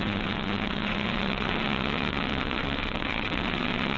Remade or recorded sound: remade